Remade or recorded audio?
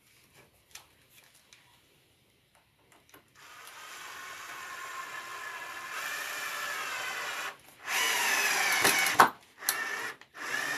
recorded